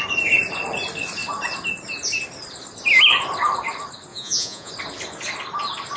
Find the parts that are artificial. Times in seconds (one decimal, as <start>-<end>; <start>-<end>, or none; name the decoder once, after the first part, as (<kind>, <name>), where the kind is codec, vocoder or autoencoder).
4.1-4.7 (vocoder, Vocos)